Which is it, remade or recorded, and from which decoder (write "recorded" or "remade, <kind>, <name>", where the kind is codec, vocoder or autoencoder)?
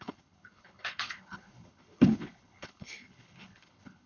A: remade, codec, HILCodec